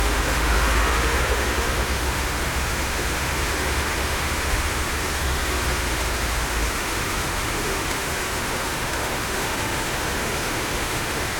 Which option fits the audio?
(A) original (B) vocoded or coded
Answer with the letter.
B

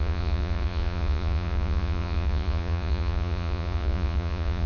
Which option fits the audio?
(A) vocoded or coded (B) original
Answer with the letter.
A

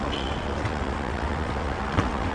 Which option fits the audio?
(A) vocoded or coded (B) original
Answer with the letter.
A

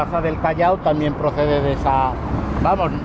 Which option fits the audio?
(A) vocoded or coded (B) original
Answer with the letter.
B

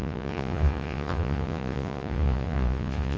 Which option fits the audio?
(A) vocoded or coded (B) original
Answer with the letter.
A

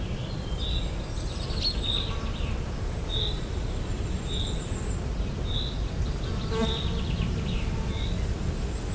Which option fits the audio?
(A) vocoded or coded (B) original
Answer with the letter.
B